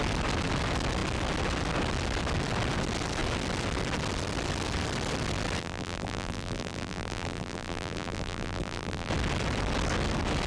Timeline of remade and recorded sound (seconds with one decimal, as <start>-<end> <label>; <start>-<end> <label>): 0.0-5.6 recorded; 5.6-9.1 remade; 9.1-10.5 recorded